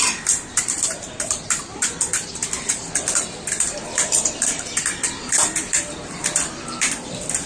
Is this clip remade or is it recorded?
remade